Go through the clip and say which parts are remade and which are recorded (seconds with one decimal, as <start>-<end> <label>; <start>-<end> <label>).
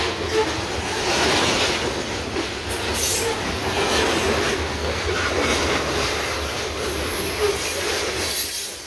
0.0-4.5 recorded; 4.5-5.1 remade; 5.1-8.9 recorded